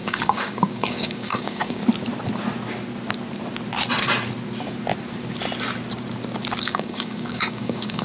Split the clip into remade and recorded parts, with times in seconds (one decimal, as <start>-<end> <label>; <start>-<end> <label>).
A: 0.0-1.8 remade; 1.8-6.6 recorded; 6.6-8.0 remade

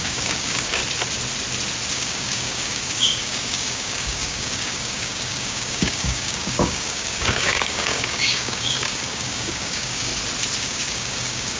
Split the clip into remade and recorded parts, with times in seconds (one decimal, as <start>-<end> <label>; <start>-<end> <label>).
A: 0.0-0.8 remade; 0.8-1.9 recorded; 1.9-10.1 remade; 10.1-10.6 recorded; 10.6-11.6 remade

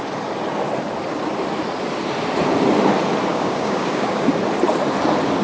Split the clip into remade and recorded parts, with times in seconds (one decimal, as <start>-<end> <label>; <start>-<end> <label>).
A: 0.0-3.3 recorded; 3.3-4.3 remade; 4.3-5.4 recorded

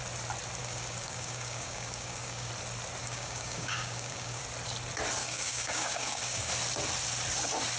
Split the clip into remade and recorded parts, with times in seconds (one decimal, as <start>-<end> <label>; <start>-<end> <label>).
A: 0.0-0.6 recorded; 0.6-2.5 remade; 2.5-3.0 recorded; 3.0-4.4 remade; 4.4-5.2 recorded; 5.2-6.5 remade; 6.5-7.8 recorded

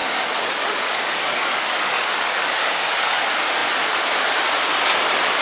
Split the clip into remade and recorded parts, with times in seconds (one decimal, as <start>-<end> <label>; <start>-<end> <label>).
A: 0.0-3.2 remade; 3.2-5.4 recorded